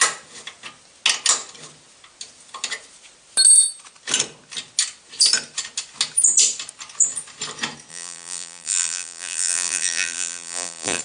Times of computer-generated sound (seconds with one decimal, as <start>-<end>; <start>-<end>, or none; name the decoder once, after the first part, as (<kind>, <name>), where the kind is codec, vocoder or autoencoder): 7.9-11.0 (vocoder, BigVGAN v2)